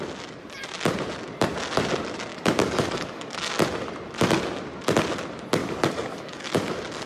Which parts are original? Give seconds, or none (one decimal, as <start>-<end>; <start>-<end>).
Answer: 0.0-2.3; 3.5-5.6